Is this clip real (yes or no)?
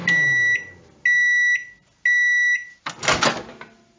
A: yes